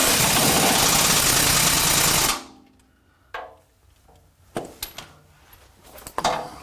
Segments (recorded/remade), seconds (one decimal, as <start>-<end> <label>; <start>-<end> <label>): 0.0-0.8 remade; 0.8-6.6 recorded